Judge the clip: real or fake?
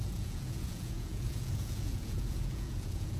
fake